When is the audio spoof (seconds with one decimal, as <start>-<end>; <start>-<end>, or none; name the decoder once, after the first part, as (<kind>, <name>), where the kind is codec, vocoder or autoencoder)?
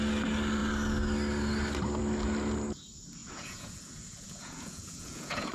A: 3.2-5.5 (vocoder, Vocos)